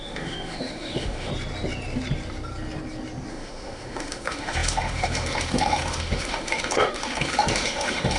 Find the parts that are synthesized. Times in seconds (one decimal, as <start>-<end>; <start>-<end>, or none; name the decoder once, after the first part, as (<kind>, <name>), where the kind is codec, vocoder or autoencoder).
0.0-1.3 (autoencoder, DAC-VAE); 3.3-8.2